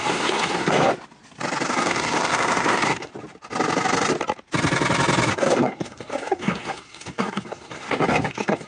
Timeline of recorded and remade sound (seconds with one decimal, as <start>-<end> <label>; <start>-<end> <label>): 0.0-0.9 remade; 0.9-1.7 recorded; 1.7-3.1 remade; 3.1-5.3 recorded; 5.3-8.7 remade